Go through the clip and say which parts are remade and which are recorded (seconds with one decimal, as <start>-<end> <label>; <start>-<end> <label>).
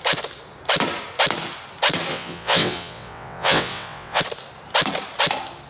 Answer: 0.0-2.1 recorded; 2.1-4.2 remade; 4.2-5.7 recorded